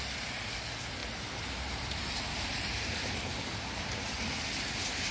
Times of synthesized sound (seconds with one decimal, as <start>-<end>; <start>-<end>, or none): 1.0-4.1